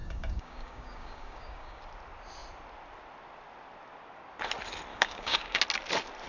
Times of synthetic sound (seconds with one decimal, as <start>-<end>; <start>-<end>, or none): 0.0-1.8; 4.9-5.6